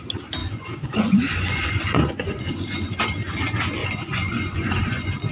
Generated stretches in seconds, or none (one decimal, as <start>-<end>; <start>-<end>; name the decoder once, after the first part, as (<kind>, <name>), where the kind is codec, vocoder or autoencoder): 0.4-3.0 (vocoder, Vocos); 3.8-5.3